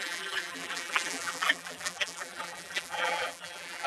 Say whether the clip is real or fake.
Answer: fake